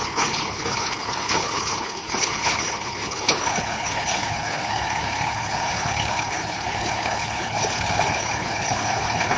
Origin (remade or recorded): remade